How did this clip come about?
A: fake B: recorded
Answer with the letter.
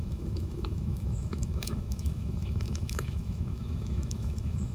A